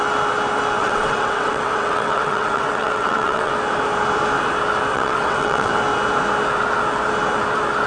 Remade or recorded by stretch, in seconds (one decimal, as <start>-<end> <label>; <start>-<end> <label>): 0.0-0.8 recorded; 0.8-3.5 remade; 3.5-4.9 recorded; 4.9-5.7 remade; 5.7-7.9 recorded